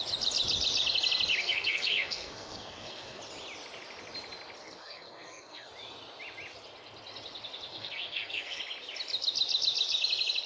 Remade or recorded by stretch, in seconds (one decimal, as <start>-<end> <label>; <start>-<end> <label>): 0.0-1.4 recorded; 1.4-3.2 remade; 3.2-4.6 recorded; 4.6-5.7 remade; 5.7-7.7 recorded; 7.7-8.6 remade; 8.6-10.5 recorded